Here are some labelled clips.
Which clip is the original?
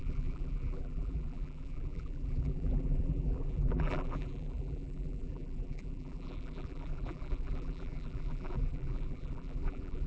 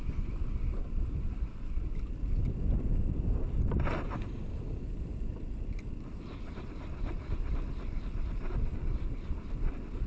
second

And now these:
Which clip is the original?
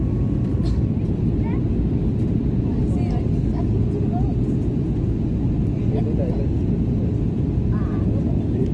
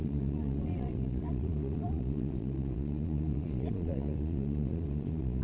first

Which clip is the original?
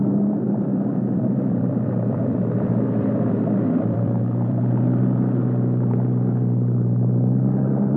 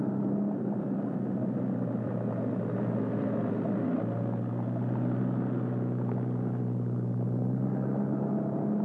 second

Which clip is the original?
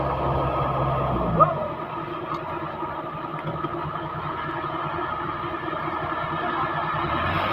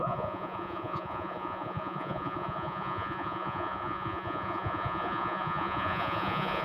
first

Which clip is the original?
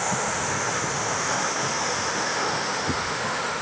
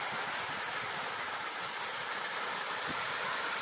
second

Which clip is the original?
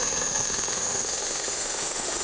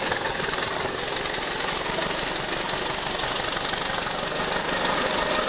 second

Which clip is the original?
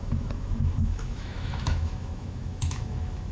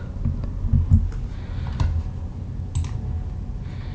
second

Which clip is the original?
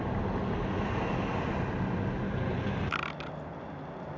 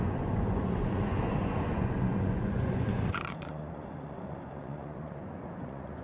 first